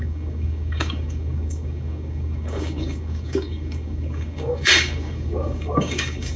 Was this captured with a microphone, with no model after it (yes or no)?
no